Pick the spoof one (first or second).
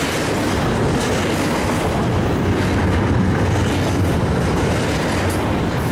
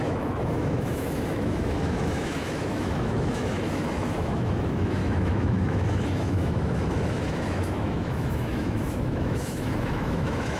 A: second